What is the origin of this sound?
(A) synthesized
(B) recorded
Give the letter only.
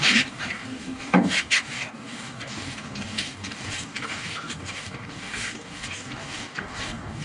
A